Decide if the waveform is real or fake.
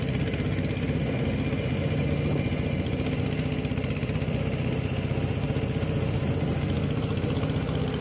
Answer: real